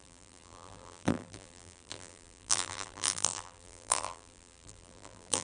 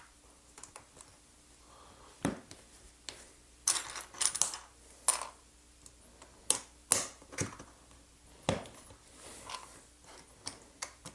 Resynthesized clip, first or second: first